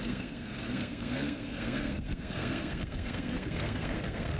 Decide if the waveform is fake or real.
fake